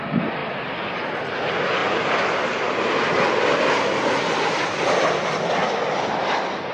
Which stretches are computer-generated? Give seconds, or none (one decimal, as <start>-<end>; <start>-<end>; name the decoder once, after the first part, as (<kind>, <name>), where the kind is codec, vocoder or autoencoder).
none